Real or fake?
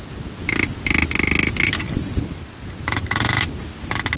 real